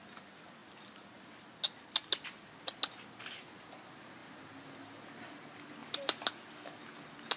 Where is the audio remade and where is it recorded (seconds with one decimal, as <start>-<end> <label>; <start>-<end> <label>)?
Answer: 0.0-7.4 recorded